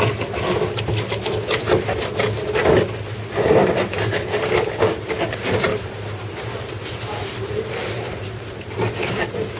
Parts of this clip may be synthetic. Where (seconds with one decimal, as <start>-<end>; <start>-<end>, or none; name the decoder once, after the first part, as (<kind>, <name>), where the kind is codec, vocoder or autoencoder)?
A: 5.7-8.7 (vocoder, BigVGAN v2)